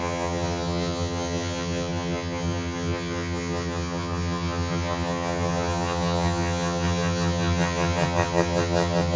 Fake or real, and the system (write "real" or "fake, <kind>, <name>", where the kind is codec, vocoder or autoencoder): fake, vocoder, HiFi-GAN